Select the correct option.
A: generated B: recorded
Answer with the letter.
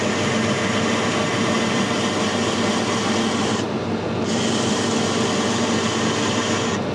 B